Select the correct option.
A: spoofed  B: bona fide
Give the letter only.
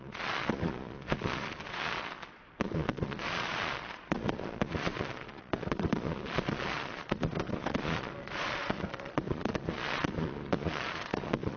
A